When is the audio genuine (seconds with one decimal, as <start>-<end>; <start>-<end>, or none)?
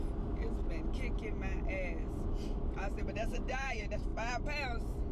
0.0-3.0; 4.1-5.1